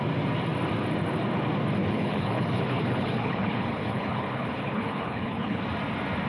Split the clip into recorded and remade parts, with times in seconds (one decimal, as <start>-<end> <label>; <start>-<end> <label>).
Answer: 0.0-1.8 recorded; 1.8-5.6 remade; 5.6-6.3 recorded